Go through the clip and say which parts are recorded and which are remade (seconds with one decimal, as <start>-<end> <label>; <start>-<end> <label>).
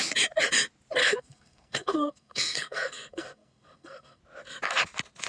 0.0-1.0 recorded; 1.0-4.2 remade; 4.2-5.3 recorded